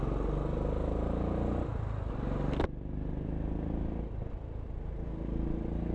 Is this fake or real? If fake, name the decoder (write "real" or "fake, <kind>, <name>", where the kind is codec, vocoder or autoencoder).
real